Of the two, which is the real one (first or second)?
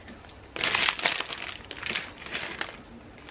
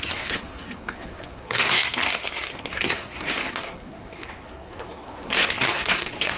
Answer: first